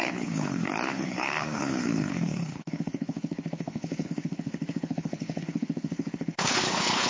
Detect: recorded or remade remade